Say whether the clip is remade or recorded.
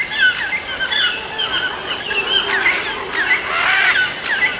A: recorded